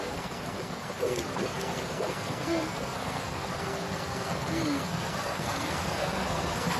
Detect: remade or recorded remade